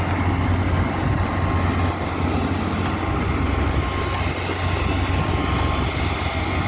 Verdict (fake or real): real